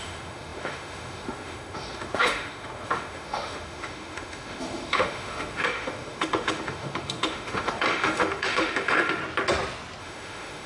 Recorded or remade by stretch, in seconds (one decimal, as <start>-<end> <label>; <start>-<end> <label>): 0.0-9.2 remade; 9.2-10.0 recorded; 10.0-10.7 remade